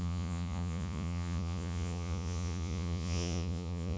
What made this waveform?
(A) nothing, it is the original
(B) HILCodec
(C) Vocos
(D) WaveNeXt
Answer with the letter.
C